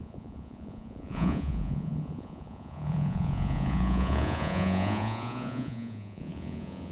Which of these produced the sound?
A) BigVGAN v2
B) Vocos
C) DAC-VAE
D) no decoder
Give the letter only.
B